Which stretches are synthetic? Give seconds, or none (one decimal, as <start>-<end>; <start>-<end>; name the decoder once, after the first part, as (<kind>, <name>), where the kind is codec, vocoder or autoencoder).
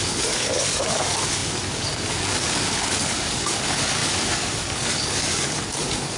0.0-6.2 (codec, DAC)